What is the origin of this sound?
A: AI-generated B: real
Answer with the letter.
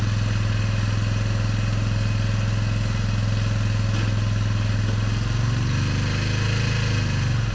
B